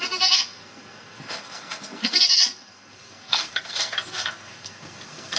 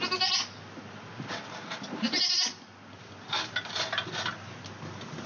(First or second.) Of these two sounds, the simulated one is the first